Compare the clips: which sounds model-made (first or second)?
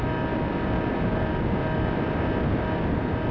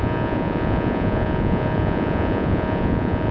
second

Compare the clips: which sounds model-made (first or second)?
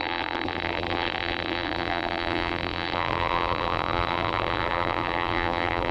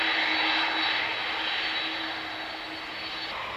first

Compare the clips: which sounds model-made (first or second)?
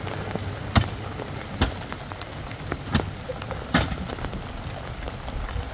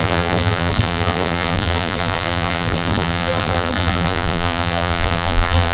second